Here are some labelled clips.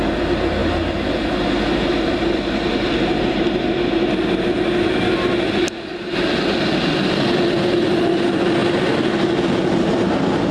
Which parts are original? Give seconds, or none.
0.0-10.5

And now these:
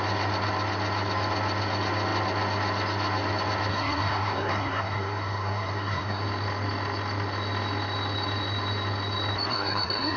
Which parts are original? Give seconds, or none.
0.0-3.7; 6.2-9.5

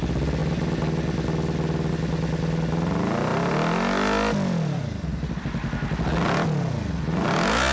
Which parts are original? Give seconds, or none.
0.0-7.7

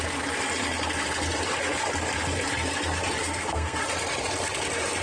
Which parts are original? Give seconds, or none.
0.0-3.2; 3.8-5.0

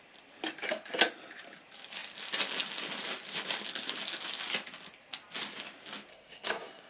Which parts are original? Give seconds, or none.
0.0-6.1